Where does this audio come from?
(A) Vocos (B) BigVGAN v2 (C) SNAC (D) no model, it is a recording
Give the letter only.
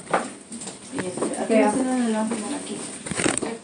D